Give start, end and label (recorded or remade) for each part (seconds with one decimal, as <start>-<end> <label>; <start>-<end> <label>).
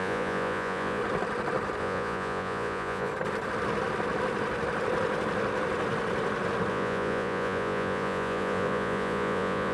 0.0-1.0 remade; 1.0-1.8 recorded; 1.8-3.1 remade; 3.1-6.7 recorded; 6.7-9.7 remade